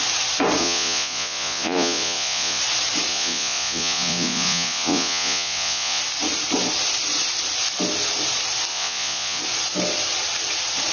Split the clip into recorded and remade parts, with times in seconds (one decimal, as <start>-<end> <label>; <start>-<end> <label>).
0.0-0.6 recorded; 0.6-2.6 remade; 2.6-3.1 recorded; 3.1-6.0 remade; 6.0-8.7 recorded; 8.7-9.4 remade; 9.4-10.9 recorded